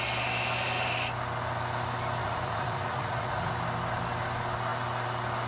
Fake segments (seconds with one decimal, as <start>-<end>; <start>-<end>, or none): 2.2-3.5